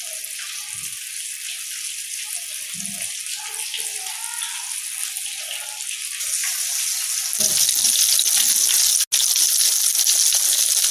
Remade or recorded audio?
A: recorded